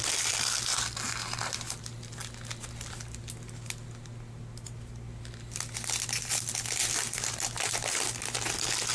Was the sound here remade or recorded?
recorded